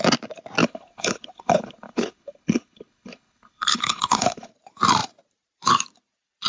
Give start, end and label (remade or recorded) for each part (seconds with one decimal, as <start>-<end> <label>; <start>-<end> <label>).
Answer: 0.0-0.6 recorded; 0.6-4.5 remade; 4.5-6.5 recorded